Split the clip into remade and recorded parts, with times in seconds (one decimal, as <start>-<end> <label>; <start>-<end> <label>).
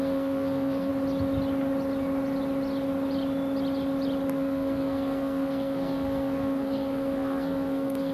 0.0-0.9 remade; 0.9-4.3 recorded; 4.3-8.1 remade